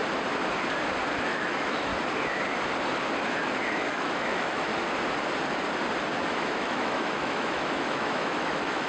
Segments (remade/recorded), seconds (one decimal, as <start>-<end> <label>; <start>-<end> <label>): 0.0-1.2 recorded; 1.2-1.9 remade; 1.9-3.7 recorded; 3.7-4.7 remade; 4.7-6.2 recorded; 6.2-8.9 remade